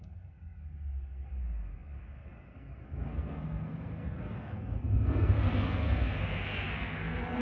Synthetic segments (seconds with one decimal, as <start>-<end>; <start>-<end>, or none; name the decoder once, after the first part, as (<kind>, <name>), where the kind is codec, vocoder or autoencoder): 0.0-7.4 (codec, SNAC)